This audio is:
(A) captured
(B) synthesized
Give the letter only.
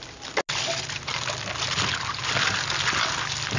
A